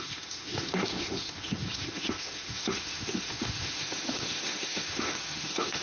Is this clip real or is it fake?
fake